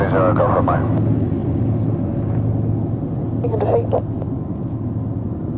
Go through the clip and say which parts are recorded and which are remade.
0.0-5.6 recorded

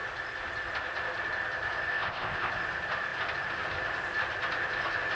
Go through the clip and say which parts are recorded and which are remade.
0.0-1.9 recorded; 1.9-2.5 remade; 2.5-5.1 recorded

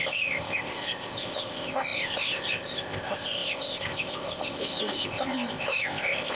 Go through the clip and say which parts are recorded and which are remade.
0.0-6.3 remade

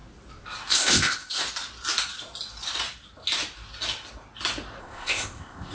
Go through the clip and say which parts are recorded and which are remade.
0.0-0.7 recorded; 0.7-1.4 remade; 1.4-4.8 recorded; 4.8-5.7 remade

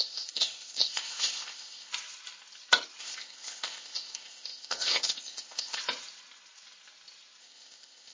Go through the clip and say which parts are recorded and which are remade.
0.0-1.9 remade; 1.9-3.0 recorded; 3.0-5.8 remade; 5.8-7.4 recorded; 7.4-8.1 remade

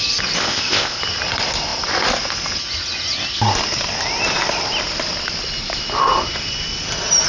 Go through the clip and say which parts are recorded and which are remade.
0.0-0.4 recorded; 0.4-1.0 remade; 1.0-7.3 recorded

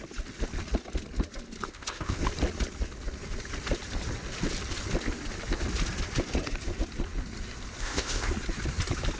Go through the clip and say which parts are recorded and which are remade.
0.0-1.7 recorded; 1.7-2.2 remade; 2.2-7.8 recorded; 7.8-8.3 remade; 8.3-9.2 recorded

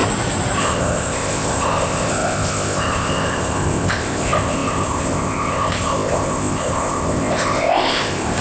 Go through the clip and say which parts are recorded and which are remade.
0.0-0.6 recorded; 0.6-8.4 remade